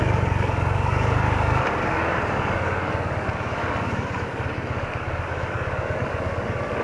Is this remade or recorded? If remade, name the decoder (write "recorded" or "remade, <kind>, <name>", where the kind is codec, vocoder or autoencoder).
remade, codec, DAC